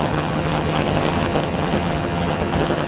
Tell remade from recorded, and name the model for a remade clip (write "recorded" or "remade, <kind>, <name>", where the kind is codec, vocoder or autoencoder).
remade, vocoder, HiFi-GAN